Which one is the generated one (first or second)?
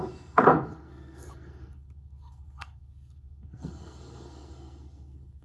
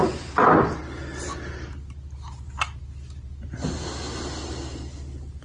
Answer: first